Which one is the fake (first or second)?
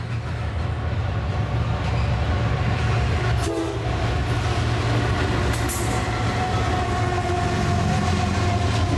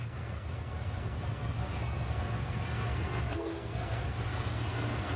second